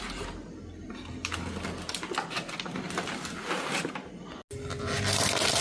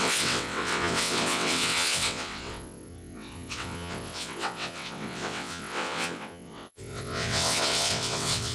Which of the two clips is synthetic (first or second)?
second